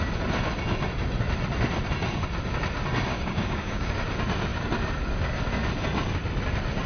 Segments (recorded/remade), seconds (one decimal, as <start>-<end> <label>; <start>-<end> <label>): 0.0-3.1 recorded; 3.1-3.9 remade; 3.9-6.9 recorded